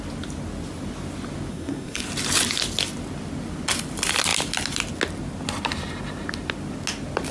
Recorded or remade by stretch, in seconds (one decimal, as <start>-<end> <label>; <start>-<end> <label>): 0.0-1.5 recorded; 1.5-2.0 remade; 2.0-7.3 recorded